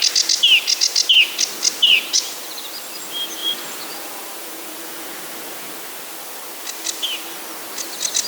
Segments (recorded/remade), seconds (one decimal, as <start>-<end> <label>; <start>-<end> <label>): 0.0-1.9 recorded; 1.9-2.6 remade; 2.6-3.4 recorded; 3.4-5.7 remade; 5.7-8.3 recorded